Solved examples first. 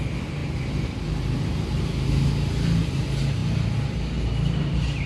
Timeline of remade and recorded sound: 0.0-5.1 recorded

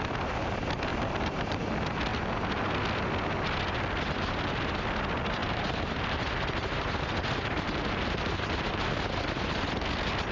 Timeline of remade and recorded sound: 0.0-0.9 recorded; 0.9-1.6 remade; 1.6-5.4 recorded; 5.4-8.9 remade; 8.9-10.3 recorded

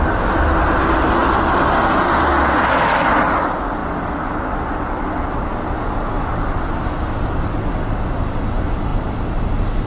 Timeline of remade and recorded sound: 0.0-1.2 recorded; 1.2-1.8 remade; 1.8-9.9 recorded

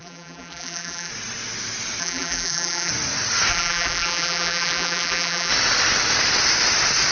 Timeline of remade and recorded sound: 0.0-1.1 remade; 1.1-2.0 recorded; 2.0-2.9 remade; 2.9-3.5 recorded; 3.5-5.5 remade; 5.5-7.1 recorded

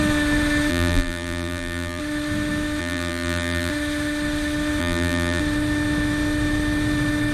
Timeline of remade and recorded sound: 0.0-0.7 recorded; 0.7-2.0 remade; 2.0-2.8 recorded; 2.8-3.7 remade; 3.7-4.8 recorded; 4.8-5.4 remade; 5.4-7.3 recorded

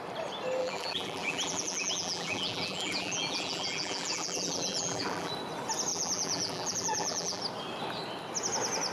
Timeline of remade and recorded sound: 0.0-0.6 recorded; 0.6-5.3 remade; 5.3-5.9 recorded; 5.9-7.4 remade; 7.4-8.9 recorded

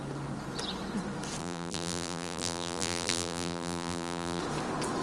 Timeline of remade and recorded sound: 0.0-1.4 recorded; 1.4-4.4 remade; 4.4-5.0 recorded

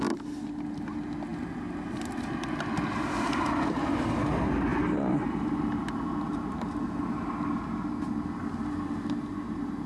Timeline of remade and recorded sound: 0.0-4.7 recorded; 4.7-7.9 remade; 7.9-9.3 recorded; 9.3-9.9 remade